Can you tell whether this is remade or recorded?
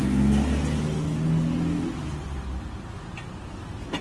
recorded